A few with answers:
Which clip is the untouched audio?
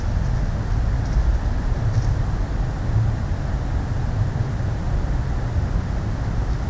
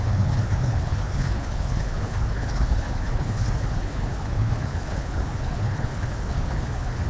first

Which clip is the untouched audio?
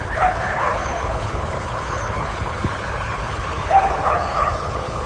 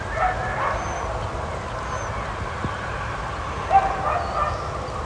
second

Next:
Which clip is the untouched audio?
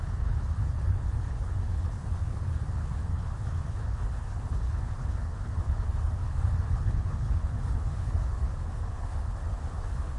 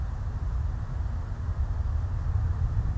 second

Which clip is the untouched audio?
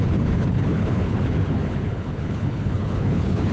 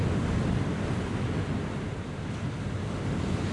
second